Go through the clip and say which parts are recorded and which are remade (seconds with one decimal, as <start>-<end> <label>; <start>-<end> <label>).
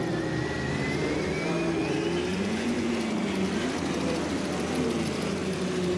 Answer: 0.0-2.3 recorded; 2.3-2.9 remade; 2.9-6.0 recorded